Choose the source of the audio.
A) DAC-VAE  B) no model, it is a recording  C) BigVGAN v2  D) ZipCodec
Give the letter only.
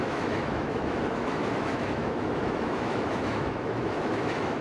A